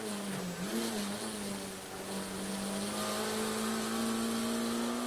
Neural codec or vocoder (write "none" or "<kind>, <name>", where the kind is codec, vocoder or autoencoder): none